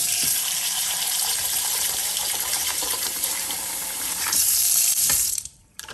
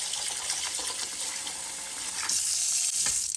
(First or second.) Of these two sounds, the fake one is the first